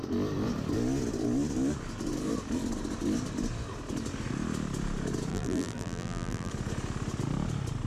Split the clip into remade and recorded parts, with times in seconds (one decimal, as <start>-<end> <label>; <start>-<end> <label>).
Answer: 0.0-5.3 recorded; 5.3-6.5 remade; 6.5-7.9 recorded